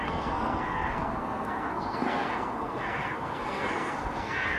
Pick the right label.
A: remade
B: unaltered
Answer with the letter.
A